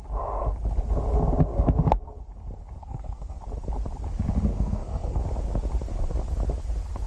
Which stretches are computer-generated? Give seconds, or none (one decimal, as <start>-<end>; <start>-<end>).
2.8-3.4; 4.5-5.2